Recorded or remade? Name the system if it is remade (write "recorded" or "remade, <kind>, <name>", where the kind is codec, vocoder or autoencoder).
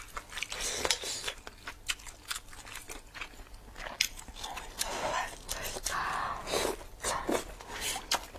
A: recorded